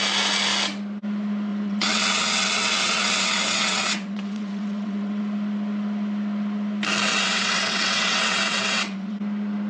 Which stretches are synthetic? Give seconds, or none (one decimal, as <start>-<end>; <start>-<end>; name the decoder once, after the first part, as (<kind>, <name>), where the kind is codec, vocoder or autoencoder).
1.5-5.2 (vocoder, WaveNeXt); 7.1-9.2